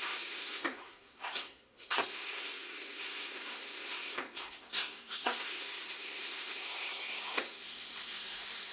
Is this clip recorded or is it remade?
remade